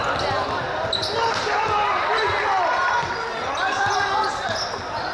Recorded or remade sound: recorded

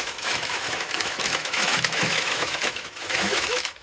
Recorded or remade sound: remade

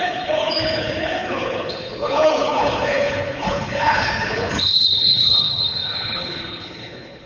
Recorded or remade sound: remade